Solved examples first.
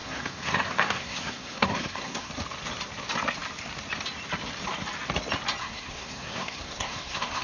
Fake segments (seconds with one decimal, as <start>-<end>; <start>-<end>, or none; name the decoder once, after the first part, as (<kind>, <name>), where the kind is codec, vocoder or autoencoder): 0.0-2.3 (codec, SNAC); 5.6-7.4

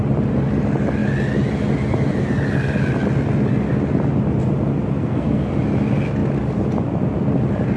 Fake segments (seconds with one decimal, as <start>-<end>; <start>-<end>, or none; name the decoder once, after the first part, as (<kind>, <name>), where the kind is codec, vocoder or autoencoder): 5.0-5.5 (codec, SNAC)

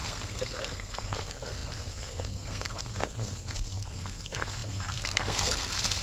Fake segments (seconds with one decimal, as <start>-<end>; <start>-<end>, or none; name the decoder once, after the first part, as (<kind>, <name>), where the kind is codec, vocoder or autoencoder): 0.0-6.0 (codec, SNAC)